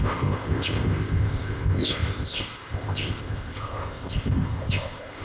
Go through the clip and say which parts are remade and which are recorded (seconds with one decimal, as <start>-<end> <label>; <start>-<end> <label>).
0.0-5.2 remade